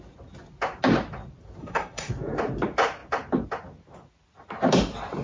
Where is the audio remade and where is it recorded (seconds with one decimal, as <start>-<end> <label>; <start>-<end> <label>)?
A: 0.0-1.6 recorded; 1.6-2.1 remade; 2.1-5.2 recorded